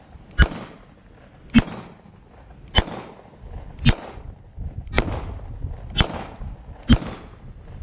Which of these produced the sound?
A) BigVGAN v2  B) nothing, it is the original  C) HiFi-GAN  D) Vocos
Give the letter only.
B